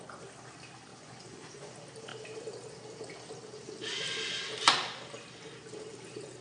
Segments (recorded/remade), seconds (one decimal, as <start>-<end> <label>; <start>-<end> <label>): 0.0-0.9 recorded; 0.9-1.7 remade; 1.7-6.4 recorded